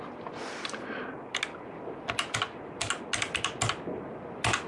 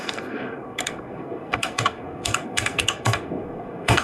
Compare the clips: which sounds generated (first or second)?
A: second